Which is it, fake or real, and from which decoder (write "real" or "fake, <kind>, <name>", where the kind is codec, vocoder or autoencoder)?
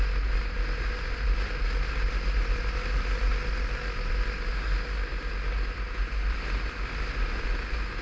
real